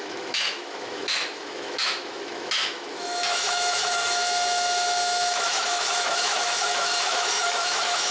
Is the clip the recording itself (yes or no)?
no